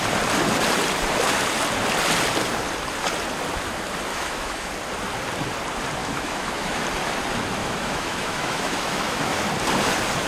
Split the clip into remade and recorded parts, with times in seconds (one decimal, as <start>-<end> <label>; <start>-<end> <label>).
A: 0.0-4.1 recorded; 4.1-4.7 remade; 4.7-6.0 recorded; 6.0-6.8 remade; 6.8-7.6 recorded; 7.6-9.2 remade; 9.2-10.3 recorded